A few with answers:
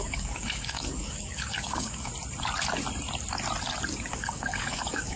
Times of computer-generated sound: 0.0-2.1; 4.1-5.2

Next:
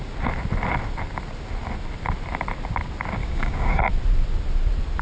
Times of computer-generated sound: 3.2-3.8

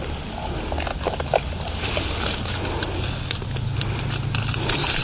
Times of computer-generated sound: none